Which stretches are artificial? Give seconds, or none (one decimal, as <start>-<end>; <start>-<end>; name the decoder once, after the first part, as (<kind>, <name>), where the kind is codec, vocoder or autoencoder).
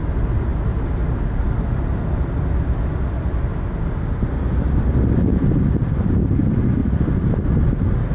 none